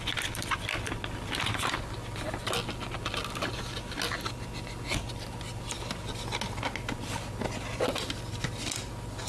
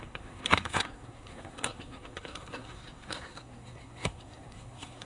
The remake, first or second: second